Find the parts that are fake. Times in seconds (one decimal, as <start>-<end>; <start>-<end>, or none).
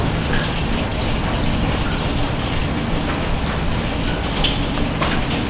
none